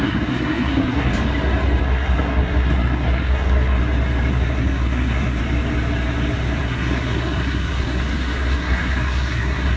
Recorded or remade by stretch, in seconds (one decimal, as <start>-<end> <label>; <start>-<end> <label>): 0.0-1.1 remade; 1.1-1.8 recorded; 1.8-3.8 remade; 3.8-4.3 recorded; 4.3-5.4 remade; 5.4-6.6 recorded; 6.6-9.8 remade

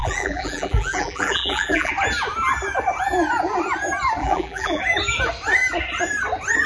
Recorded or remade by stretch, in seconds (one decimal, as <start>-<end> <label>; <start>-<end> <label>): 0.0-1.9 remade; 1.9-4.2 recorded; 4.2-4.8 remade; 4.8-6.7 recorded

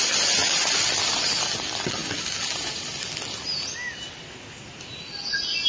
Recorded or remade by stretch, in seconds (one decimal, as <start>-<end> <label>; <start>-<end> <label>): 0.0-5.7 recorded

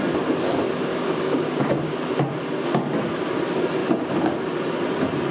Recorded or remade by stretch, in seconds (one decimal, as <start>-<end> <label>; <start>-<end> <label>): 0.0-0.9 recorded; 0.9-2.1 remade; 2.1-3.8 recorded; 3.8-4.4 remade; 4.4-5.3 recorded

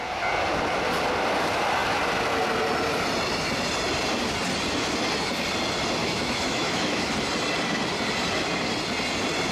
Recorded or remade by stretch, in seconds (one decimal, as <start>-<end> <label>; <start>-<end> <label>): 0.0-6.0 recorded; 6.0-7.1 remade; 7.1-9.5 recorded

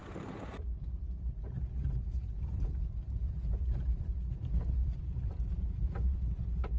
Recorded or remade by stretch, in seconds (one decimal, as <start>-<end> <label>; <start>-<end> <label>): 0.0-4.1 remade; 4.1-4.8 recorded; 4.8-6.8 remade